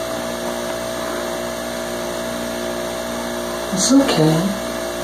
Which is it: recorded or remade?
recorded